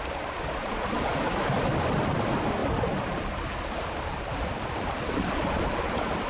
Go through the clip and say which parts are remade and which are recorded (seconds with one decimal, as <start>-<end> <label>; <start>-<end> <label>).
0.0-1.1 recorded; 1.1-1.7 remade; 1.7-6.3 recorded